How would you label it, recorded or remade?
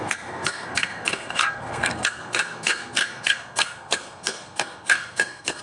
remade